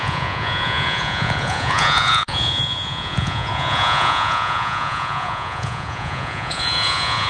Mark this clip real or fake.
fake